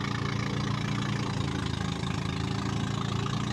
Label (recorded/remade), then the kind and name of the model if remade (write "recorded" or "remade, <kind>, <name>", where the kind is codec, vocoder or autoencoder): recorded